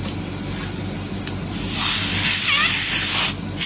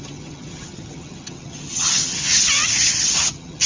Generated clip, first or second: second